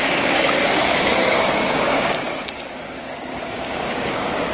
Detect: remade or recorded remade